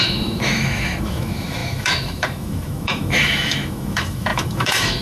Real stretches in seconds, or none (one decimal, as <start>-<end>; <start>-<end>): none